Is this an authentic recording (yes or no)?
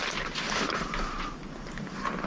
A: yes